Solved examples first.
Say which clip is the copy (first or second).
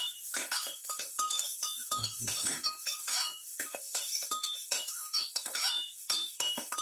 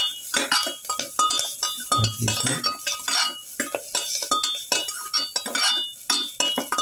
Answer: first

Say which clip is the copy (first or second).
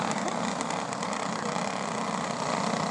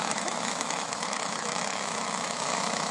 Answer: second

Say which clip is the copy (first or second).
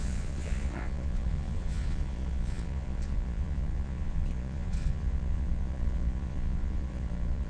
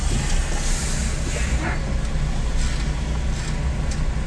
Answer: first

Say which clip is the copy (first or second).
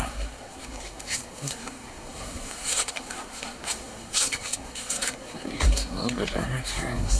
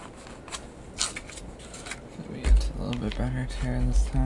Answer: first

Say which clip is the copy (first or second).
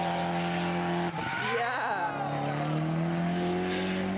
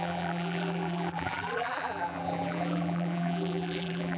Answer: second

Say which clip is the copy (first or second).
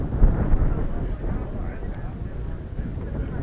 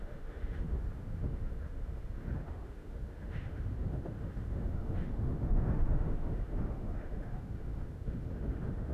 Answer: second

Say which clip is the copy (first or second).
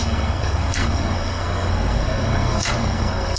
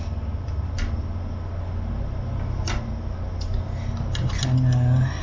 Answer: first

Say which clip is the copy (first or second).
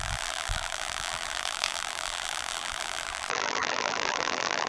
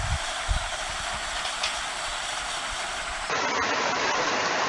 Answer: first